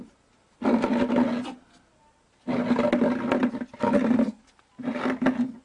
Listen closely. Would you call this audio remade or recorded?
recorded